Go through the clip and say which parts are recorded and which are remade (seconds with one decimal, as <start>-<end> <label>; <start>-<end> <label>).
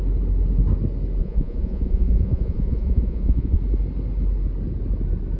0.0-1.2 recorded; 1.2-3.6 remade; 3.6-5.4 recorded